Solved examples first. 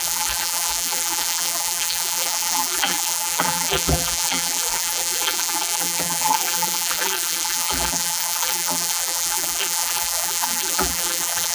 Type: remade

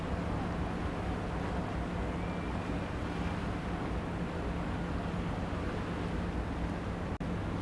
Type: recorded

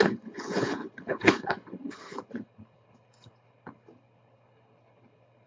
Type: remade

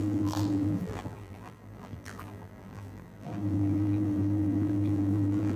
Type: remade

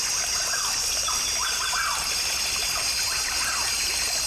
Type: recorded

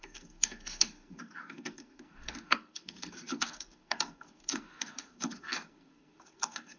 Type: remade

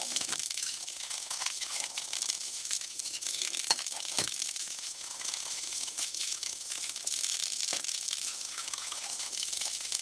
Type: remade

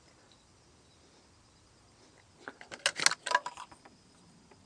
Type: recorded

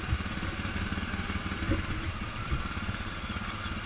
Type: recorded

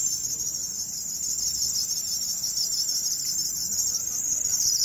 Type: recorded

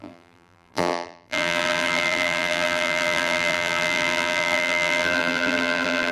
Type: remade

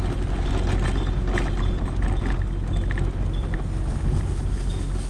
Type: recorded